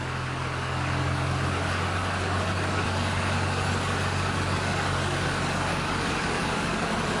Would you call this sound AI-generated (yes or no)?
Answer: yes